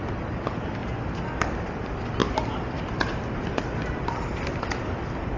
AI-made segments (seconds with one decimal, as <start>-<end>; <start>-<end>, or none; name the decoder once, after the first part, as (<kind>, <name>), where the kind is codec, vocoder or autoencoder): none